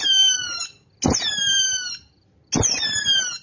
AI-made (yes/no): no